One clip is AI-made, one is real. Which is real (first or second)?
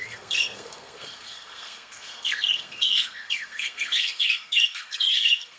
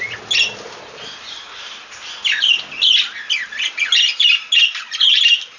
second